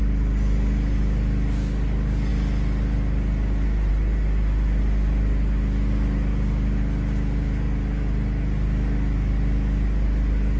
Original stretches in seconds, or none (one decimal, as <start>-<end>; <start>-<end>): 0.0-10.6